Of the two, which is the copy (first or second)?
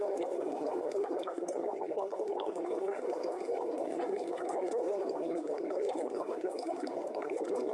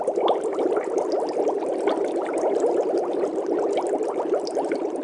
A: first